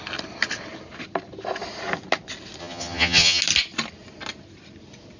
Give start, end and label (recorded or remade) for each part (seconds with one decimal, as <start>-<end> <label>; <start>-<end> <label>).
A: 0.0-2.6 recorded; 2.6-3.4 remade; 3.4-5.2 recorded